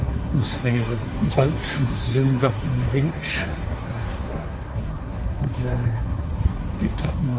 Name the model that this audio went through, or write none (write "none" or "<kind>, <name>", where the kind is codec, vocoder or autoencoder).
codec, SNAC